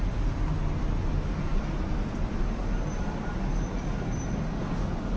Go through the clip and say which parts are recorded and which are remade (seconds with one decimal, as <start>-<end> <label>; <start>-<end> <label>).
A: 0.0-5.2 recorded